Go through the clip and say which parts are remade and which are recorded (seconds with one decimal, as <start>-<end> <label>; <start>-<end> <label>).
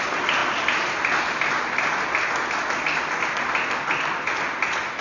0.0-5.0 recorded